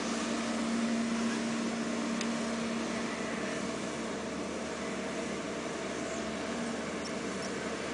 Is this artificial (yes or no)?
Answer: no